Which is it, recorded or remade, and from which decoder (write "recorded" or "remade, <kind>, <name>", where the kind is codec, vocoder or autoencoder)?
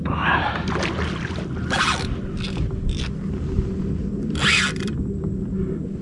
recorded